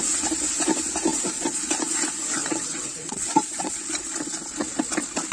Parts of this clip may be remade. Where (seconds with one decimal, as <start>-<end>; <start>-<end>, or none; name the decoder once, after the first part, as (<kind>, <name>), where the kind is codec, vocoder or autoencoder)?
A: 2.4-3.8 (vocoder, WaveNeXt)